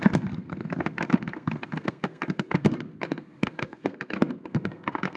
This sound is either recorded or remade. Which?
remade